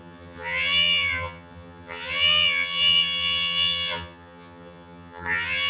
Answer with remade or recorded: remade